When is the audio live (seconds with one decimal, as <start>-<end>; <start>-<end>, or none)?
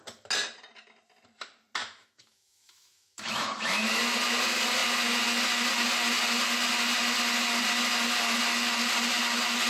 0.0-1.8; 4.0-9.7